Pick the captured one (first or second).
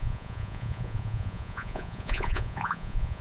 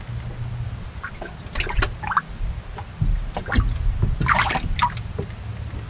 second